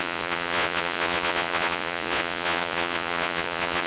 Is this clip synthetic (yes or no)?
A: yes